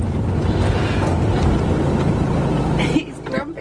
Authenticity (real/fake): real